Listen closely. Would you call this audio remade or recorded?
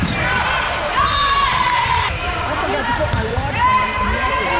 remade